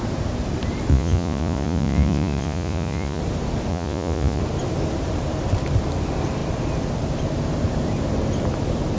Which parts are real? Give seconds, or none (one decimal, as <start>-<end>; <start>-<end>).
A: 0.0-0.9; 3.2-3.7; 4.4-9.0